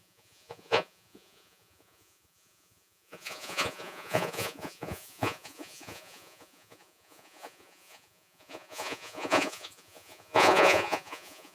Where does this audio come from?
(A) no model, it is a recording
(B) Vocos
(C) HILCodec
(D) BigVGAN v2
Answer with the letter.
B